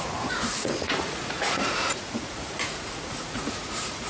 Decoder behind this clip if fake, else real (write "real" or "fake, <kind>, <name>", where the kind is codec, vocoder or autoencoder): fake, vocoder, Vocos